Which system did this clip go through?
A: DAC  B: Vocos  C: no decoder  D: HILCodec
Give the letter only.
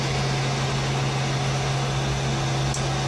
C